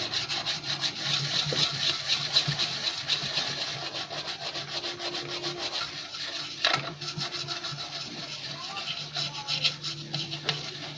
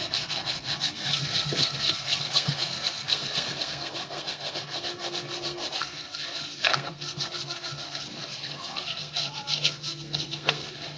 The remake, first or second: second